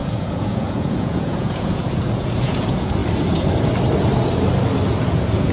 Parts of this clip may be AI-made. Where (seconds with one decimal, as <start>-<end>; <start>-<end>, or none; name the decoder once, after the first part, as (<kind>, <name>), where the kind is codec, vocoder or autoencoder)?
0.0-3.0 (vocoder, Vocos); 5.0-5.5